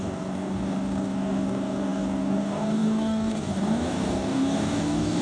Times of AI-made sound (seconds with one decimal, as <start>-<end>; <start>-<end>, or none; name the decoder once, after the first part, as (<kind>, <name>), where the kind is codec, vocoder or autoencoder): 0.0-5.2 (codec, DAC)